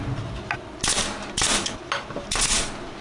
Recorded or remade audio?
recorded